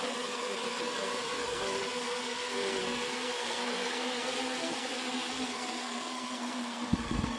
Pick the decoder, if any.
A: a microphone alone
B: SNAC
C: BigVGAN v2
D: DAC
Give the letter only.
B